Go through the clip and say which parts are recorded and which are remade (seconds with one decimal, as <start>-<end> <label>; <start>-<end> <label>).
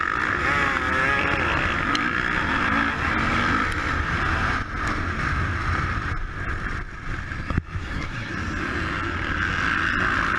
0.0-7.8 recorded; 7.8-8.3 remade; 8.3-10.4 recorded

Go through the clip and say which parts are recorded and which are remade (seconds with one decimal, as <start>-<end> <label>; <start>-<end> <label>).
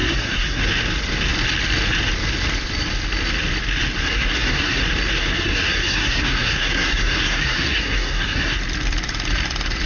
0.0-0.6 remade; 0.6-4.0 recorded; 4.0-4.8 remade; 4.8-5.2 recorded; 5.2-8.6 remade; 8.6-9.9 recorded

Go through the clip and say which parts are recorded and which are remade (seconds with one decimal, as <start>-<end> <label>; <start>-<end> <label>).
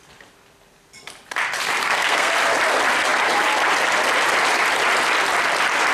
0.0-1.8 recorded; 1.8-2.3 remade; 2.3-5.9 recorded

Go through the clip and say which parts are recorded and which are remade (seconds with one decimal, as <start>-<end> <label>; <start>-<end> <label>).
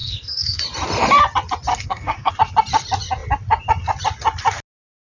0.0-0.6 remade; 0.6-1.7 recorded; 1.7-2.3 remade; 2.3-5.1 recorded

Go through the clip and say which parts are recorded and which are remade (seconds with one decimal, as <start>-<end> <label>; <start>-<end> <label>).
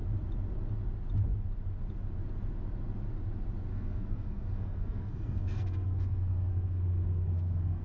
0.0-3.7 recorded; 3.7-7.8 remade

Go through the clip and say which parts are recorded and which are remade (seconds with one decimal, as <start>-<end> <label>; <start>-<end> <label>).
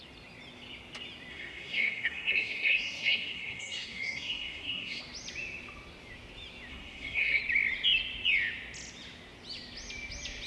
0.0-1.3 recorded; 1.3-5.0 remade; 5.0-6.7 recorded; 6.7-7.4 remade; 7.4-10.5 recorded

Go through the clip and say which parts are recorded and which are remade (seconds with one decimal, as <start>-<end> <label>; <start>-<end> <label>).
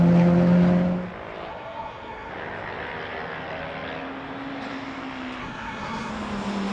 0.0-1.5 recorded; 1.5-2.3 remade; 2.3-5.4 recorded; 5.4-6.1 remade; 6.1-6.7 recorded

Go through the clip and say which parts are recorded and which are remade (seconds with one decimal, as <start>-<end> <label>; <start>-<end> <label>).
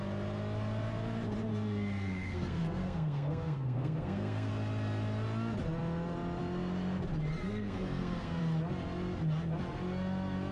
0.0-1.5 recorded; 1.5-4.5 remade; 4.5-7.4 recorded; 7.4-8.4 remade; 8.4-10.5 recorded